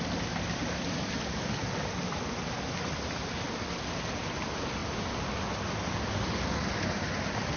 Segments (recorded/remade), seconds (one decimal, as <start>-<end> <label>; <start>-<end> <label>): 0.0-7.6 recorded